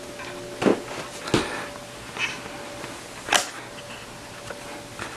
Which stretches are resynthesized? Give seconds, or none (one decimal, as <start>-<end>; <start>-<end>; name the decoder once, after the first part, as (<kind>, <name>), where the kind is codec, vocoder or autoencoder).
none